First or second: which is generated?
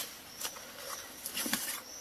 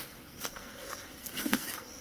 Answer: second